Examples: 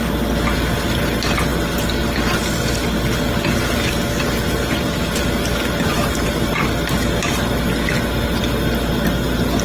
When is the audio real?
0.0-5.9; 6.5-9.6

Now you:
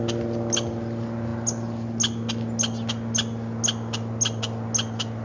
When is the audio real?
0.0-5.2